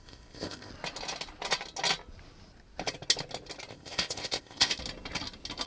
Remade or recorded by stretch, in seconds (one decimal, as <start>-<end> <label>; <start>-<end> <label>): 0.0-0.7 remade; 0.7-3.7 recorded; 3.7-4.7 remade; 4.7-5.7 recorded